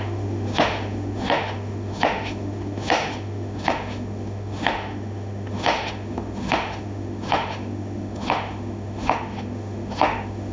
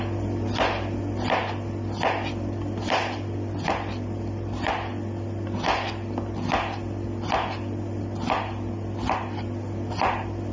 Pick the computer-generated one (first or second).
first